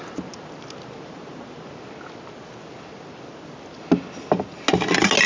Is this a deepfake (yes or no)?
no